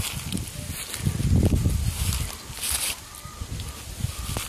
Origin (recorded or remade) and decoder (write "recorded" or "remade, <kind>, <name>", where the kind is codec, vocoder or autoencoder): recorded